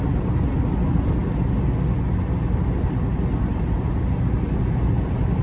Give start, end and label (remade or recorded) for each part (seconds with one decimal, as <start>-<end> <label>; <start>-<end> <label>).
0.0-5.4 recorded